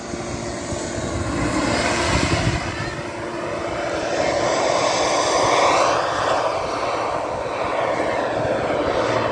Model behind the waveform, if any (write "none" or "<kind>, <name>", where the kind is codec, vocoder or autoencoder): none